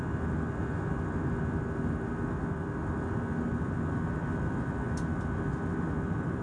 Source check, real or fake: real